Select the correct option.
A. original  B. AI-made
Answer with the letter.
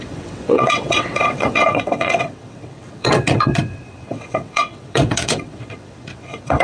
B